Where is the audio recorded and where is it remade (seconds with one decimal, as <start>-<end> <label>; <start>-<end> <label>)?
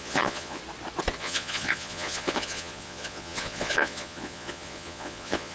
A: 0.0-0.6 remade; 0.6-1.2 recorded; 1.2-5.5 remade